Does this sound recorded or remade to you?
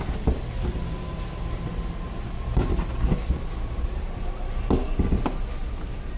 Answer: recorded